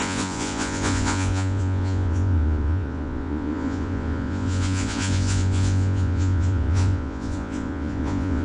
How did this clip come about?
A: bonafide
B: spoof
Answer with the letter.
B